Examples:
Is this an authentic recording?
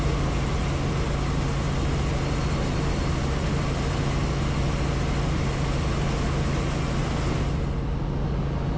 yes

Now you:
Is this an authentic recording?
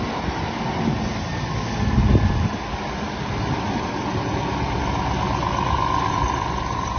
yes